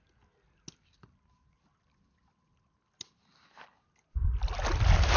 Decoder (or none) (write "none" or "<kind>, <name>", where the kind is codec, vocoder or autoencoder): none